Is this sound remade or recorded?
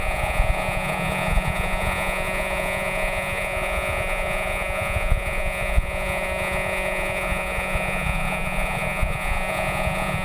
remade